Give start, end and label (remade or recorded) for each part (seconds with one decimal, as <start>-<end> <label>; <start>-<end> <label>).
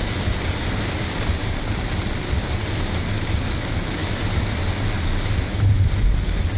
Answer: 0.0-6.6 recorded